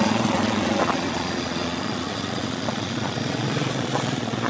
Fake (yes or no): yes